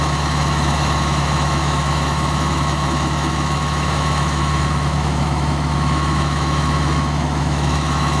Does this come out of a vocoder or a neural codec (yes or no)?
yes